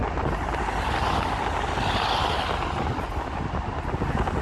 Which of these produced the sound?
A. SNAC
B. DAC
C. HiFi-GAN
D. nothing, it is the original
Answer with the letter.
D